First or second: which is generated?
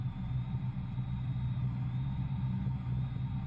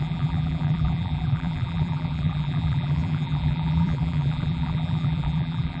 second